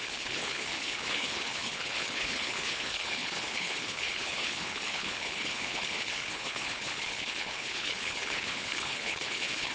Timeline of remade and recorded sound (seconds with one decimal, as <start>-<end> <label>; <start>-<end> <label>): 0.0-9.7 remade